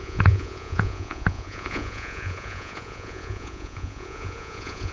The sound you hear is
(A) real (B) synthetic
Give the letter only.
B